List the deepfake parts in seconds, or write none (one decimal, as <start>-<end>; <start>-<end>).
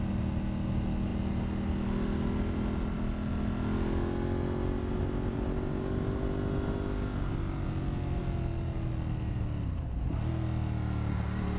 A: none